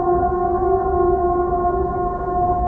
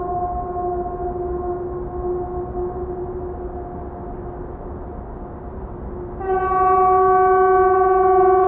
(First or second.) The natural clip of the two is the second